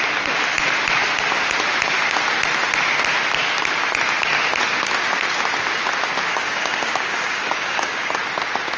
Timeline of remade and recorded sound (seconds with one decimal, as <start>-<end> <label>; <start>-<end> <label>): 0.0-6.3 recorded; 6.3-8.2 remade; 8.2-8.8 recorded